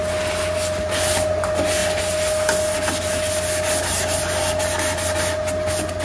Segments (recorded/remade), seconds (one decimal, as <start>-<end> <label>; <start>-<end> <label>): 0.0-6.0 recorded